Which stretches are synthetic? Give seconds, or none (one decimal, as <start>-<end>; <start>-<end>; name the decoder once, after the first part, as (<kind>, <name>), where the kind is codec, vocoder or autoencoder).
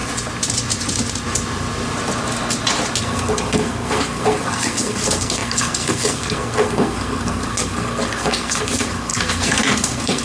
3.0-10.2 (codec, SNAC)